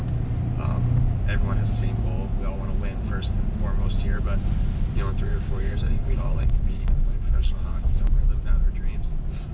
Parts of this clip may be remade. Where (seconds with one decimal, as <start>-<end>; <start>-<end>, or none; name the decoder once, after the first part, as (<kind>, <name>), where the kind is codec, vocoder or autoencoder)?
5.3-8.0 (codec, DAC)